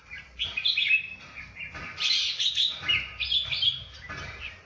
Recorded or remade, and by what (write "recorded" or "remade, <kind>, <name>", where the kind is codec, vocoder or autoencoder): remade, vocoder, BigVGAN v2